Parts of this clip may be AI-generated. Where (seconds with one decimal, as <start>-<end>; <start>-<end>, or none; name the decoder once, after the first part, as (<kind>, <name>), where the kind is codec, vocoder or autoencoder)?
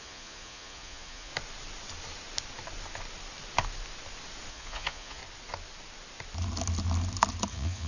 0.0-1.3 (vocoder, Vocos); 4.5-5.2; 7.5-7.9